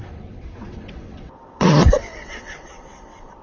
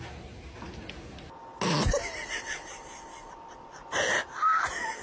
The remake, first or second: first